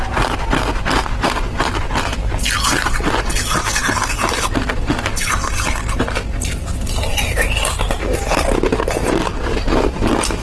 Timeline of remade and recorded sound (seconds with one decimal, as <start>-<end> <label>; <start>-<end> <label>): 0.0-10.4 recorded